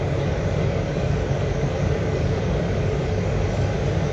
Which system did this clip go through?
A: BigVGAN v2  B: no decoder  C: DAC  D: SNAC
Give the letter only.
C